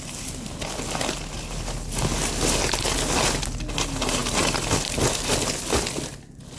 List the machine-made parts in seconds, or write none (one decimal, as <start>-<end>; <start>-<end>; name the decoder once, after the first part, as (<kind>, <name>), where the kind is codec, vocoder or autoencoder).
none